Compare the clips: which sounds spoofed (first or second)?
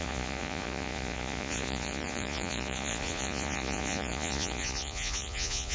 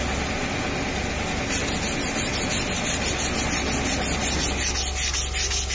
first